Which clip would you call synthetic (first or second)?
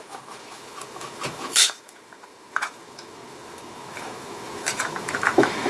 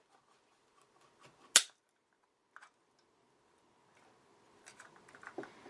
first